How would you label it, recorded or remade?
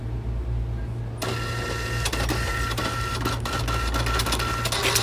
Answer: recorded